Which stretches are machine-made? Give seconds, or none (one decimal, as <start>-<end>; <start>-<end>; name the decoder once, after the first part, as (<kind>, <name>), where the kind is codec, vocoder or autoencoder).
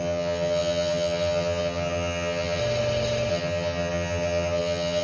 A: 0.0-2.6 (vocoder, HiFi-GAN); 3.3-5.0